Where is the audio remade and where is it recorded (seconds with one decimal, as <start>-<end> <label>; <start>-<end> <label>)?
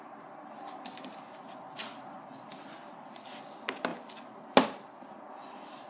0.0-5.9 recorded